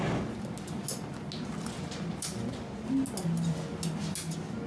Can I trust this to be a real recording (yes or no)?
yes